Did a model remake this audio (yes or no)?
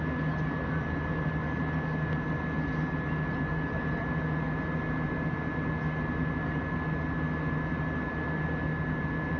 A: no